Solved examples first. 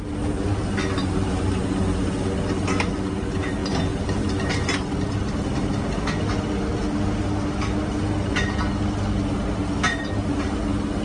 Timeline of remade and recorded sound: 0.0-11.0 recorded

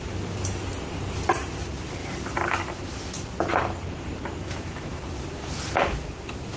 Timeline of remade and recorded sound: 0.0-4.4 recorded; 4.4-5.0 remade; 5.0-6.6 recorded

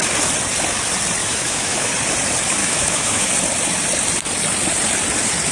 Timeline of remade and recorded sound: 0.0-1.2 recorded; 1.2-1.9 remade; 1.9-2.6 recorded; 2.6-3.3 remade; 3.3-5.5 recorded